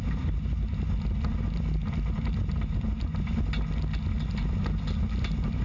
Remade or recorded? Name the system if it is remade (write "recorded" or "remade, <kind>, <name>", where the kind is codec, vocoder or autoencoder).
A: recorded